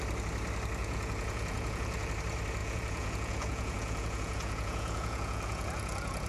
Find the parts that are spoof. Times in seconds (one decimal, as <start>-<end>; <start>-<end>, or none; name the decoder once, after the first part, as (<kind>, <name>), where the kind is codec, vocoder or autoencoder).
0.8-2.1 (vocoder, Vocos); 2.6-6.3